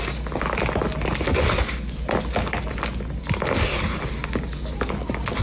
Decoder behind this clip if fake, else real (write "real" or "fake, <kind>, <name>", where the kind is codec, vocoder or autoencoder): real